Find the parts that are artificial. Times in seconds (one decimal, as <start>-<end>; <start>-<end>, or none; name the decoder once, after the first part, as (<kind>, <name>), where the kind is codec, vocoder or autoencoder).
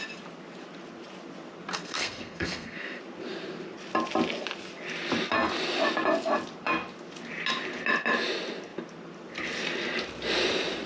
1.7-3.0 (codec, SNAC)